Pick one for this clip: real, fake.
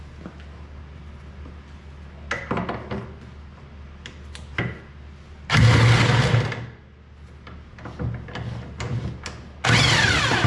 real